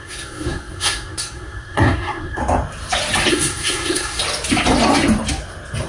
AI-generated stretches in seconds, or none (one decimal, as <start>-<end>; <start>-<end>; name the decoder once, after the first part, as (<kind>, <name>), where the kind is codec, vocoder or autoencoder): 0.0-2.4 (codec, SNAC); 3.3-4.2